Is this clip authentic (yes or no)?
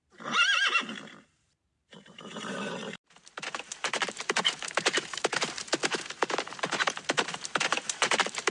no